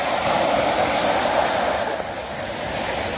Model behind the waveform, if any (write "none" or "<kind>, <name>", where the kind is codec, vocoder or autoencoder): none